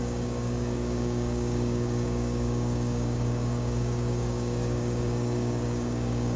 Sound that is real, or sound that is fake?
fake